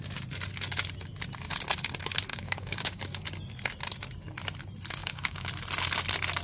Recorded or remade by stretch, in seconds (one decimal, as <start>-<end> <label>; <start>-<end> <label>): 0.0-2.3 recorded; 2.3-3.0 remade; 3.0-5.0 recorded; 5.0-5.5 remade; 5.5-6.4 recorded